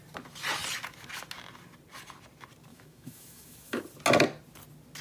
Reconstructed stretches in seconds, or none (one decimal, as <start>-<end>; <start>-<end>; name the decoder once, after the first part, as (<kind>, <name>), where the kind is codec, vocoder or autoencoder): 2.7-3.8 (autoencoder, DAC-VAE)